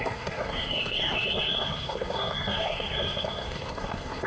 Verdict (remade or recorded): remade